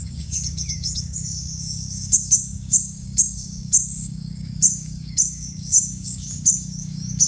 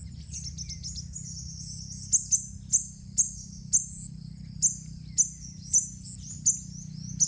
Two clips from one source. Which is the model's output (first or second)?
first